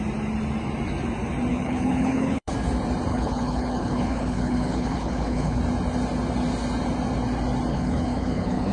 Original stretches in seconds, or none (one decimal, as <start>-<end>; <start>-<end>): 0.0-1.5; 2.5-3.1; 5.6-7.7